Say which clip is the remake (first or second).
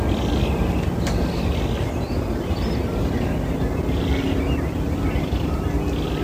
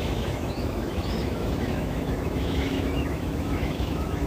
second